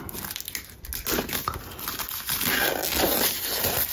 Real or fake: real